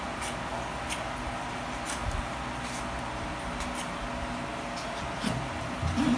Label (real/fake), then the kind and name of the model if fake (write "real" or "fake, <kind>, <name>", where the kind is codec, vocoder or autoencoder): real